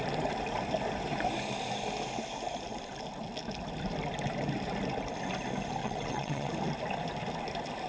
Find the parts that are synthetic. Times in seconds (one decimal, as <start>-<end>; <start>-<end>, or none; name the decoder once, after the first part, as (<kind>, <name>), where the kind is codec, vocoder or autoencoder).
5.8-6.5 (vocoder, WaveNeXt)